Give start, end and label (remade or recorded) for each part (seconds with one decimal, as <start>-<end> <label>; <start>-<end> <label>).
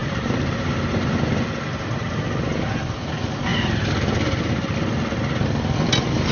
0.0-1.2 remade; 1.2-6.3 recorded